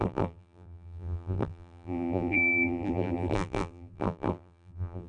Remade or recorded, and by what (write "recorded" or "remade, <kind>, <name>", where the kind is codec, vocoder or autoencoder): remade, vocoder, BigVGAN v2